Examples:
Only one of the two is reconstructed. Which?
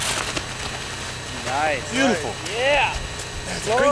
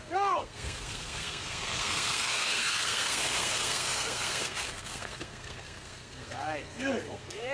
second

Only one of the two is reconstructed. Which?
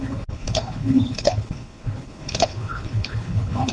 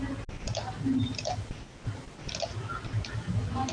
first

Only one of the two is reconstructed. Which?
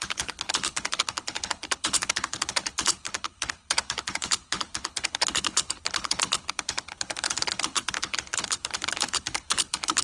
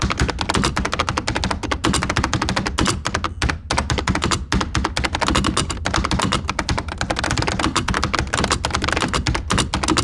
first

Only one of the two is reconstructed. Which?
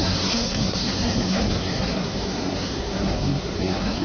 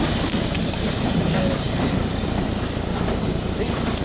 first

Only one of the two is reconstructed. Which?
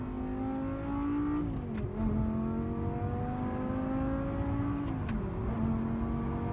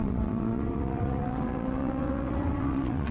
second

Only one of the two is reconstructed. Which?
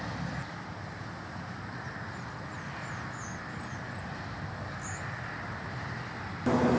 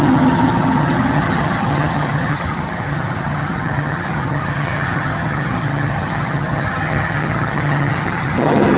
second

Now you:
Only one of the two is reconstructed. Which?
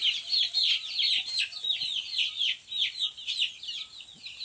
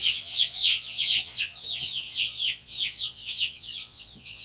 second